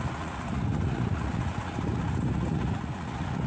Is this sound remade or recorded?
remade